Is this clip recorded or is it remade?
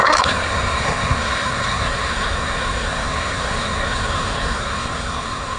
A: remade